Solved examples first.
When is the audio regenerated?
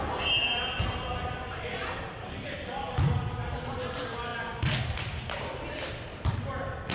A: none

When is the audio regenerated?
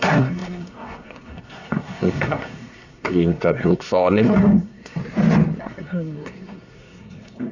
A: 0.0-5.0 (codec, SNAC); 5.6-7.5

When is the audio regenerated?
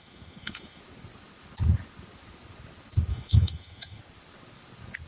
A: 0.0-0.8 (autoencoder, DAC-VAE); 3.1-4.0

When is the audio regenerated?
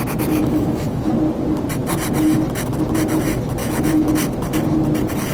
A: 0.4-1.1 (autoencoder, DAC-VAE); 3.6-4.1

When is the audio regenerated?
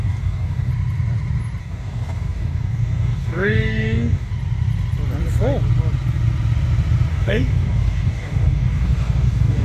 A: 0.0-0.7 (codec, DAC); 1.6-4.3; 7.1-9.6